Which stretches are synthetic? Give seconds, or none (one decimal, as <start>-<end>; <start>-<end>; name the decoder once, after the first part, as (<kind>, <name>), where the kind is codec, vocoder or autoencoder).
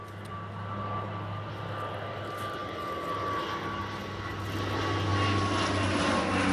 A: none